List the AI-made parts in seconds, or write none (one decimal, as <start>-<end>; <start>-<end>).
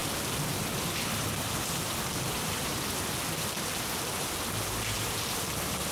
0.0-3.5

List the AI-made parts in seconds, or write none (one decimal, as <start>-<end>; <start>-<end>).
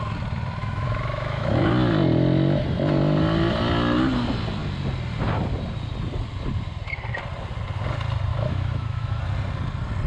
0.6-1.6; 8.3-9.2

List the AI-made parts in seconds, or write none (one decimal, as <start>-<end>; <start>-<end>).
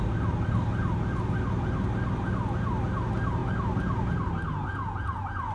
4.7-5.5